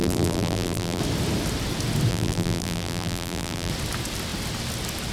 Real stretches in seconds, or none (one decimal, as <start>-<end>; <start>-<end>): 1.0-2.1; 3.7-5.1